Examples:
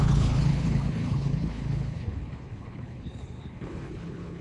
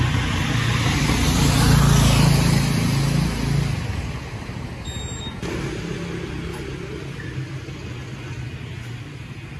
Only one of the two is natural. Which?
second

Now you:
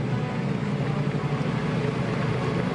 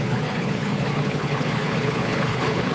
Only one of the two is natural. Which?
first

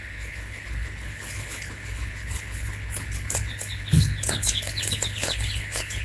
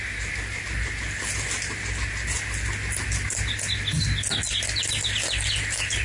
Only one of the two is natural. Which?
second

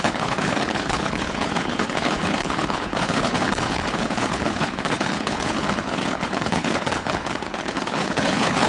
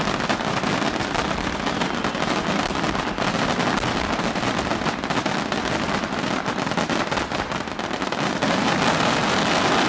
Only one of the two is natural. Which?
second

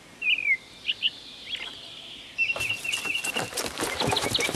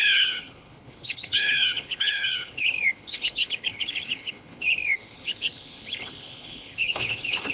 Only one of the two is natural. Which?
first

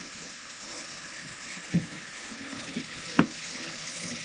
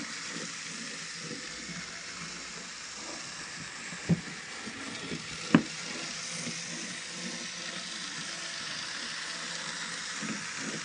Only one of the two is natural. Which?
second